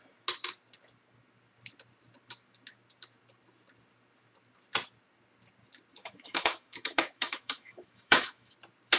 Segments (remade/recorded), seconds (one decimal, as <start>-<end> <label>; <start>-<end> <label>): 0.0-6.0 recorded; 6.0-8.5 remade; 8.5-9.0 recorded